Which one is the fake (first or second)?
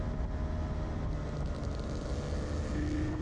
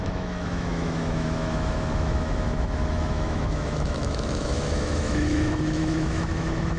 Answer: second